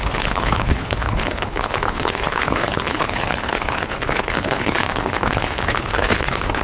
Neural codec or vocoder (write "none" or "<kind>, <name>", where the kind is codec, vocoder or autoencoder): codec, HILCodec